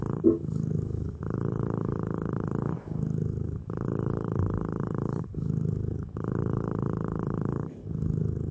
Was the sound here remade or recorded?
remade